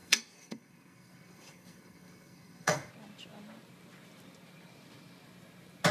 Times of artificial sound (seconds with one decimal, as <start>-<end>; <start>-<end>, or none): 0.0-2.9